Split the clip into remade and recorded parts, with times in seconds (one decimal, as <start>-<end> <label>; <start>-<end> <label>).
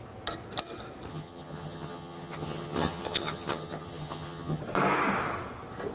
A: 0.0-1.1 recorded; 1.1-4.6 remade; 4.6-5.9 recorded